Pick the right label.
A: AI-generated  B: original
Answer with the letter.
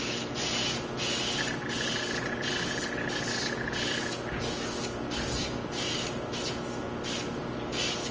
B